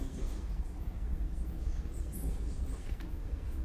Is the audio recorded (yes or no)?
no